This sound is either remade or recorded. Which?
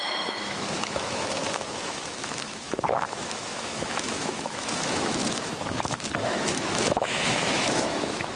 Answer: remade